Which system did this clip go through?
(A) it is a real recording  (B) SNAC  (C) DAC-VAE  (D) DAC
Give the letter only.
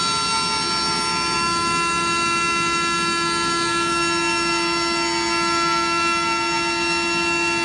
A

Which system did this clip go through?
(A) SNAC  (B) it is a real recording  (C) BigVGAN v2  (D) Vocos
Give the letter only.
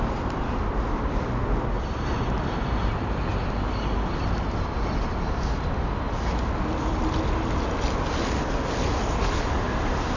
B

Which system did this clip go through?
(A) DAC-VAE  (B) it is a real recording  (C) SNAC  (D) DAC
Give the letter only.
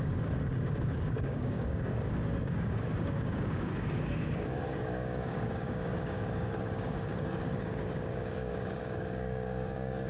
D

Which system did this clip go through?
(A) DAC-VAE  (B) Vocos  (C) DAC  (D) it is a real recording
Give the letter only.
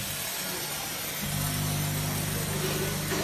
D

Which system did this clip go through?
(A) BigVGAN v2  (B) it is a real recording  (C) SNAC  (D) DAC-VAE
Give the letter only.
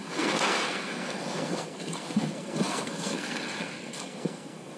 C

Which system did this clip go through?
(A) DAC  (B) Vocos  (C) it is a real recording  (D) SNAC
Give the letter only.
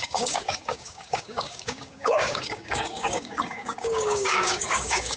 A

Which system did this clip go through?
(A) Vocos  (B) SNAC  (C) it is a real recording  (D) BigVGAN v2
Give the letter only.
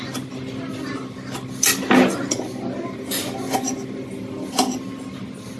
C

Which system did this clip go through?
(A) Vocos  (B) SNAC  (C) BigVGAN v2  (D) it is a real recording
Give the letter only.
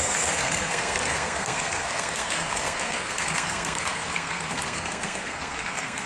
B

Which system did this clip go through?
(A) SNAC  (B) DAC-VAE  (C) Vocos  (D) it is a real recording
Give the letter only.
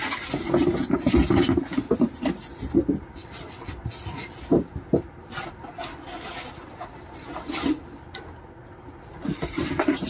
D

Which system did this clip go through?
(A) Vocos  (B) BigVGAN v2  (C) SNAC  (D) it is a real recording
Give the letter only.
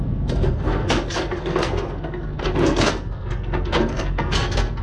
C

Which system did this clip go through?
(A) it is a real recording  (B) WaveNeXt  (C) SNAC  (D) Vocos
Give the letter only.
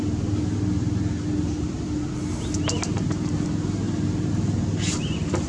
A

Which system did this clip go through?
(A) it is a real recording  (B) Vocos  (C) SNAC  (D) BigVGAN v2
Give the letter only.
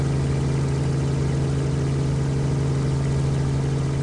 A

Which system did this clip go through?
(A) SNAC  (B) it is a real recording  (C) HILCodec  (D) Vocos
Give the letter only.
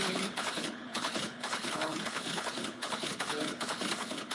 C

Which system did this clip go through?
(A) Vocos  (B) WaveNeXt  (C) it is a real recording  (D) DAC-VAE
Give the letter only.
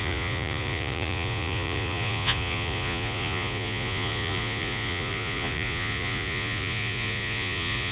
A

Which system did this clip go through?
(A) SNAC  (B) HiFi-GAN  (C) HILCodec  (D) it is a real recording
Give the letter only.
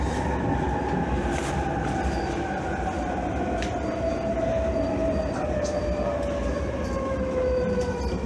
D